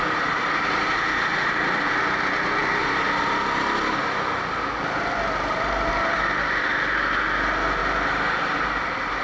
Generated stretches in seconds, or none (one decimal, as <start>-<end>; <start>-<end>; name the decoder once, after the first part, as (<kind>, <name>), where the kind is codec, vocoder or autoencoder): none